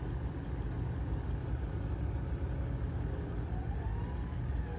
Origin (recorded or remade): recorded